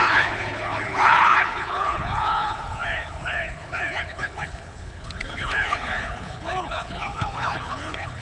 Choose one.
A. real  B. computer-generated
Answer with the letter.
B